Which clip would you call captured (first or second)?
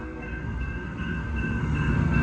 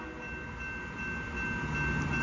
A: second